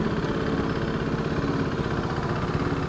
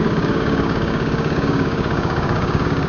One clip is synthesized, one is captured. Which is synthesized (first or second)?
second